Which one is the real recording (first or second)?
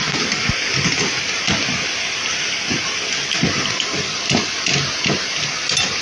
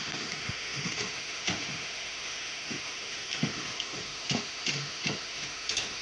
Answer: first